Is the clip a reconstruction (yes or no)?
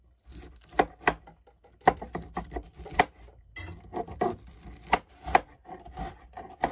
no